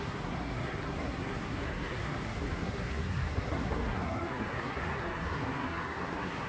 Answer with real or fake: fake